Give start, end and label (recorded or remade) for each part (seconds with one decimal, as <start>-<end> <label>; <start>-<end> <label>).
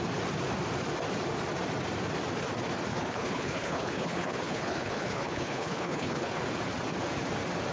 0.0-2.9 recorded; 2.9-6.4 remade; 6.4-7.7 recorded